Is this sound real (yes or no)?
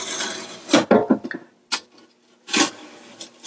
yes